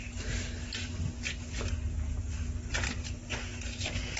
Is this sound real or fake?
real